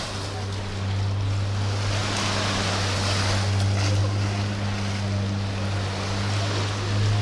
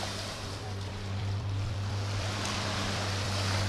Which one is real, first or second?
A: first